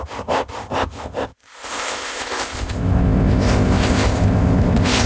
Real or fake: fake